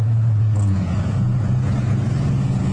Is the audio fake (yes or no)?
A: yes